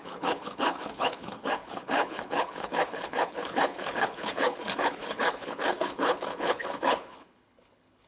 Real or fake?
fake